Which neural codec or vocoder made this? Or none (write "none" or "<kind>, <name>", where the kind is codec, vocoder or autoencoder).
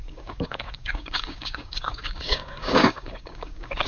codec, DAC